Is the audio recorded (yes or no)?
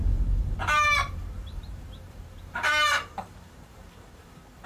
no